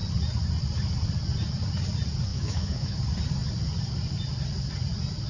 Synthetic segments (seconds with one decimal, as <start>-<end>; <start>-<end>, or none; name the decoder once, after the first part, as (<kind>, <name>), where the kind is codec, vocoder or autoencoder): 2.3-3.0 (autoencoder, DAC-VAE)